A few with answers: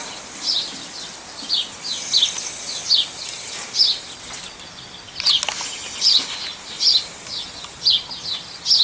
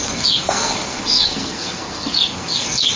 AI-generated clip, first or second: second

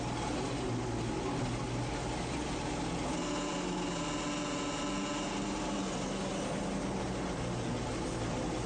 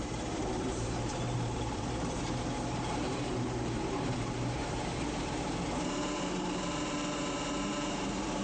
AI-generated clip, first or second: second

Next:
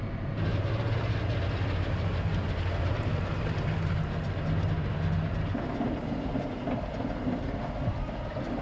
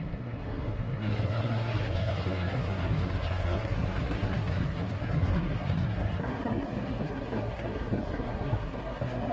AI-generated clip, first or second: second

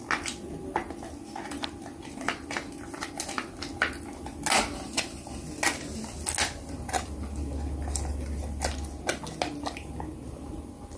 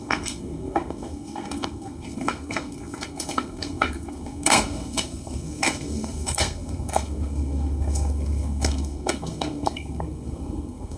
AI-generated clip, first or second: second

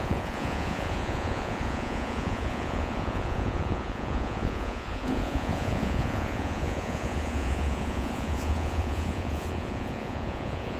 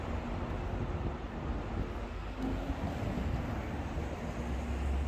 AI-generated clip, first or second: first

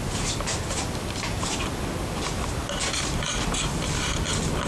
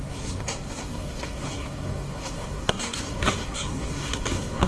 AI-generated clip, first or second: second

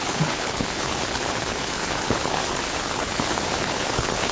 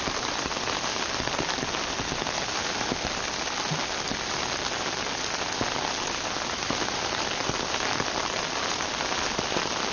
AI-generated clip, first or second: first